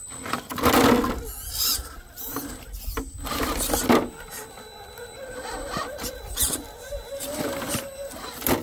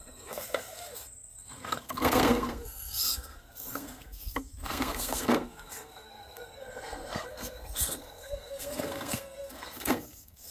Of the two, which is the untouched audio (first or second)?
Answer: first